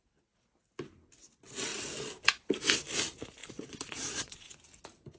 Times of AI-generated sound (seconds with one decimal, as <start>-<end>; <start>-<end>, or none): 3.4-4.5